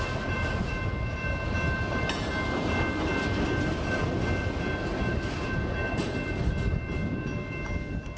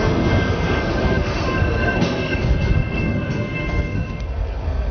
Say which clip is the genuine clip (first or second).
first